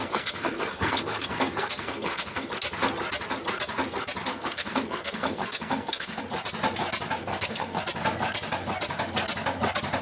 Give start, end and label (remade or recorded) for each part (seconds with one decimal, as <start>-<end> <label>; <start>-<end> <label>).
0.0-2.5 remade; 2.5-4.3 recorded; 4.3-6.2 remade; 6.2-7.2 recorded; 7.2-7.8 remade; 7.8-10.0 recorded

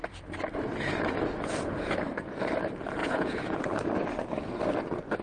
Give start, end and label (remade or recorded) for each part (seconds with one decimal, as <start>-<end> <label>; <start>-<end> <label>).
0.0-3.0 recorded; 3.0-3.6 remade; 3.6-5.2 recorded

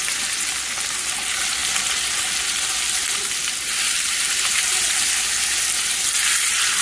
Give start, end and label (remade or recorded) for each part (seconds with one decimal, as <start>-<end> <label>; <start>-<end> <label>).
0.0-6.8 recorded

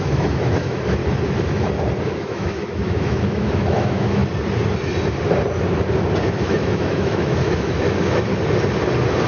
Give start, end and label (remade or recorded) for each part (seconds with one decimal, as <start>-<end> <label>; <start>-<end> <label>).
0.0-1.0 remade; 1.0-2.1 recorded; 2.1-4.2 remade; 4.2-6.2 recorded; 6.2-8.3 remade; 8.3-9.3 recorded

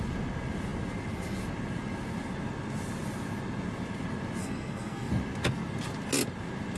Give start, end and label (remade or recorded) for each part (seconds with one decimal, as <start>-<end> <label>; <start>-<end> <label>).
0.0-4.4 recorded; 4.4-5.1 remade; 5.1-6.8 recorded

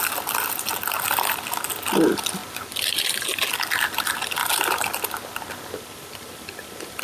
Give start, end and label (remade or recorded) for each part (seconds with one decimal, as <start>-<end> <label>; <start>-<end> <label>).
0.0-2.4 recorded; 2.4-3.0 remade; 3.0-4.4 recorded; 4.4-7.0 remade

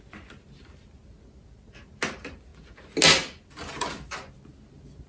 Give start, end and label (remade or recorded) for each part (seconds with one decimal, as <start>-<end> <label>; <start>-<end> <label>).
0.0-5.1 recorded

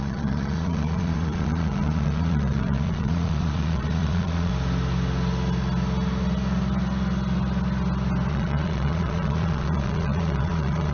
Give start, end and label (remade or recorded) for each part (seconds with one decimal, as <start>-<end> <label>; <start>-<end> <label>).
0.0-4.5 remade; 4.5-8.3 recorded; 8.3-10.9 remade